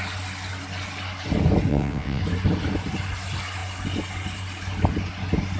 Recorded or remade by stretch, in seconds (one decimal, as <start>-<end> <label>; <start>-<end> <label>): 0.0-1.7 recorded; 1.7-2.2 remade; 2.2-5.6 recorded